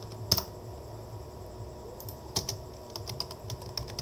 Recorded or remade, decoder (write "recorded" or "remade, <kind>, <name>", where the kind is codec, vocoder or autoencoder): recorded